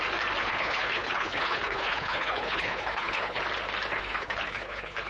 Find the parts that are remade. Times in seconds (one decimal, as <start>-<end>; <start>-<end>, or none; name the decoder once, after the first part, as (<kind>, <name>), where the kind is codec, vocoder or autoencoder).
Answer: 0.4-3.4 (codec, HILCodec); 3.9-5.1